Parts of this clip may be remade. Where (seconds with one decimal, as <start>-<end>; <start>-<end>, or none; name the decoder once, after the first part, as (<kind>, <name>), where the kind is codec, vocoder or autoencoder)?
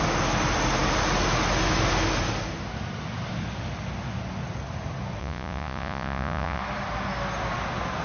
5.2-6.6 (vocoder, Vocos)